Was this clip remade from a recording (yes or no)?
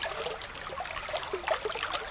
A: no